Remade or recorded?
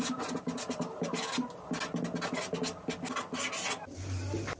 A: recorded